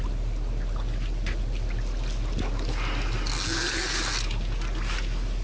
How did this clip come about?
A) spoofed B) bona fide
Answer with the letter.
B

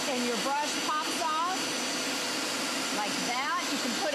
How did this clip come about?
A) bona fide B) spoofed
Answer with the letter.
A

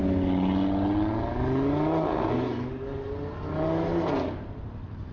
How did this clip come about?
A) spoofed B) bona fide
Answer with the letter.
B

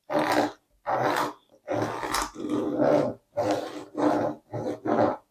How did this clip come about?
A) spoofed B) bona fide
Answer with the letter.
B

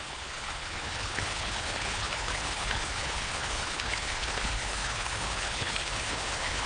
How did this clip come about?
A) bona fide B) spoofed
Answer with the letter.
B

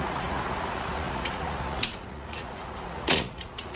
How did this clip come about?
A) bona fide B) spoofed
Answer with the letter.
B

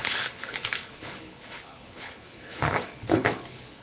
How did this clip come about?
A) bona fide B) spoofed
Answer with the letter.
B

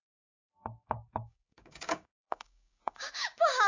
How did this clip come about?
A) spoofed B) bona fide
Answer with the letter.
A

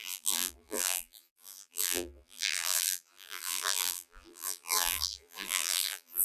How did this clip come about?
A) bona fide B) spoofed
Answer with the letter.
B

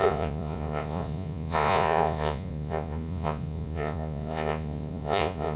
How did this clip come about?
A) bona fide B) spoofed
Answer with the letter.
B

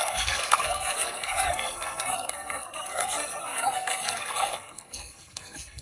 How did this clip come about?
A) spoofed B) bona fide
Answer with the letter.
A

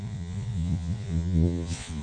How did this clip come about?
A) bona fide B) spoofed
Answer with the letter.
B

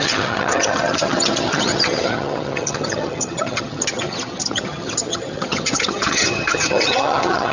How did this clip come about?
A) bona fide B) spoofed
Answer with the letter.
B